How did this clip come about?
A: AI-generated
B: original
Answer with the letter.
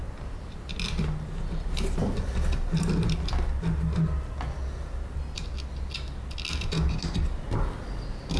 B